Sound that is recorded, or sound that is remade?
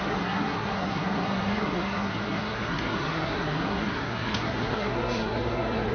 remade